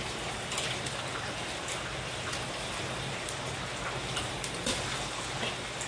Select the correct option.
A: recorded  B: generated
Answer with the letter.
A